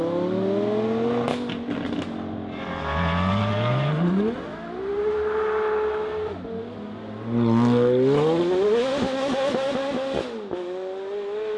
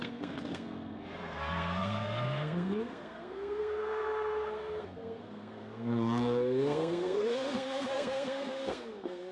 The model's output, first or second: second